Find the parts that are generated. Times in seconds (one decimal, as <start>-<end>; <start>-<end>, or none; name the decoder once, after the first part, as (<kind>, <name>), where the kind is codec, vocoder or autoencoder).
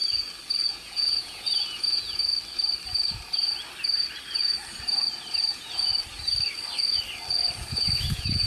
0.7-2.3 (vocoder, Vocos); 5.5-5.9; 7.7-8.5